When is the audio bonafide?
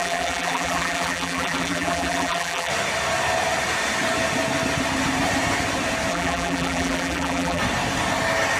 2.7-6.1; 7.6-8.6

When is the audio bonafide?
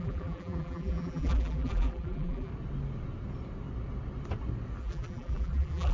2.5-4.8